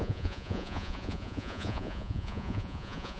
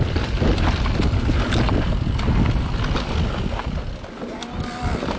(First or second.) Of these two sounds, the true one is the second